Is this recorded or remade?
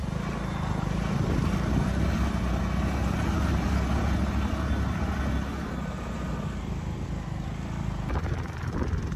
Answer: recorded